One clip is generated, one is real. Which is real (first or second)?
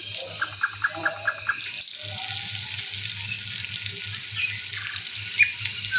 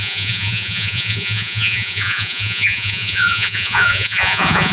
first